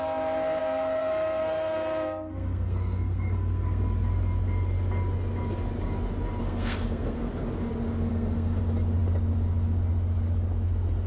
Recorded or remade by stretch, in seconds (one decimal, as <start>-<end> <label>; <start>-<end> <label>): 0.0-0.6 recorded; 0.6-3.8 remade; 3.8-6.4 recorded; 6.4-7.3 remade; 7.3-8.1 recorded; 8.1-8.6 remade; 8.6-11.1 recorded